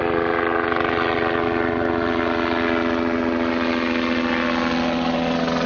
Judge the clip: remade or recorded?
recorded